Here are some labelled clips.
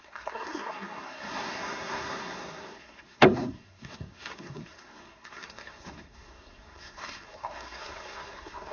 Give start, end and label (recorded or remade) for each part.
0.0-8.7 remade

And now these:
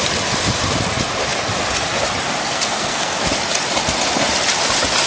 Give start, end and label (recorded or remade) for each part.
0.0-2.4 recorded; 2.4-3.3 remade; 3.3-5.1 recorded

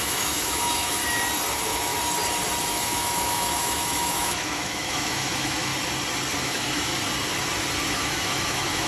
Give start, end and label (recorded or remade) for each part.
0.0-1.0 remade; 1.0-1.5 recorded; 1.5-1.9 remade; 1.9-2.7 recorded; 2.7-5.7 remade; 5.7-6.4 recorded; 6.4-6.9 remade; 6.9-7.9 recorded; 7.9-8.9 remade

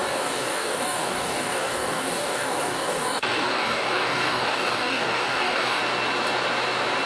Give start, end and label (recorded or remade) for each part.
0.0-5.8 remade; 5.8-7.1 recorded

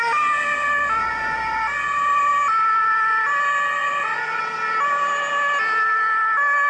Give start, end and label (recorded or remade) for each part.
0.0-3.8 recorded; 3.8-4.4 remade; 4.4-6.7 recorded

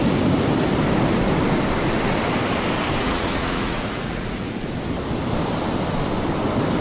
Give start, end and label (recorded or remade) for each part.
0.0-3.0 recorded; 3.0-4.7 remade; 4.7-6.8 recorded

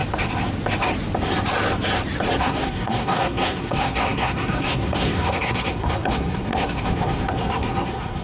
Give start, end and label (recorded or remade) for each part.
0.0-2.4 recorded; 2.4-8.2 remade

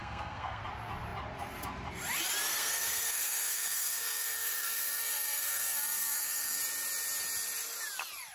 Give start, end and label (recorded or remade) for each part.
0.0-0.6 remade; 0.6-2.5 recorded; 2.5-6.6 remade; 6.6-8.3 recorded